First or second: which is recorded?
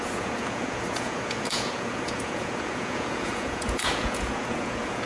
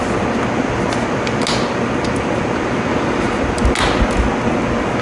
second